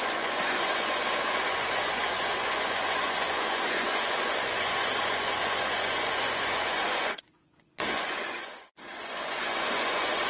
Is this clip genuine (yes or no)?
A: no